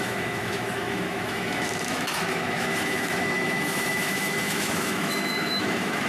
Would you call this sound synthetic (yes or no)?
yes